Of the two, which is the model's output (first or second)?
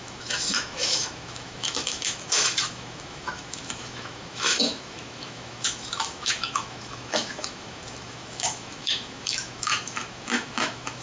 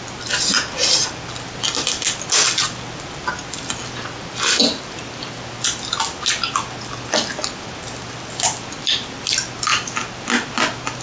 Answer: first